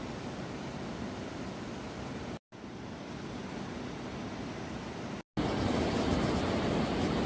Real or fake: real